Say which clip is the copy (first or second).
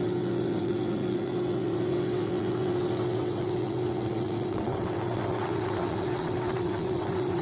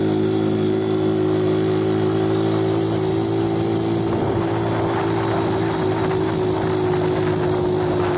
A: first